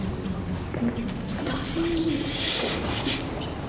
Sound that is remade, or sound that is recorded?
recorded